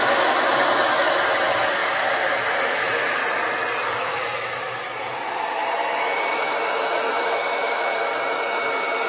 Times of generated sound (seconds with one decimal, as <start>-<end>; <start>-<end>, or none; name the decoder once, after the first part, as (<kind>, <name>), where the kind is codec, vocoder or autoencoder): 0.0-3.2 (autoencoder, DAC-VAE); 3.8-8.1; 8.7-9.1